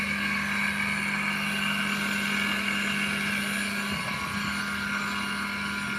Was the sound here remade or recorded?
recorded